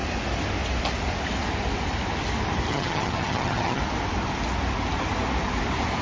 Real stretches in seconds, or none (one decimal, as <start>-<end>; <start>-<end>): 0.0-2.7; 3.8-6.0